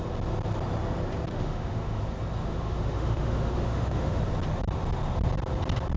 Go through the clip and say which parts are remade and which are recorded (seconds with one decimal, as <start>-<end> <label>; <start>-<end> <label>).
0.0-1.3 recorded; 1.3-2.0 remade; 2.0-2.4 recorded; 2.4-4.2 remade; 4.2-6.0 recorded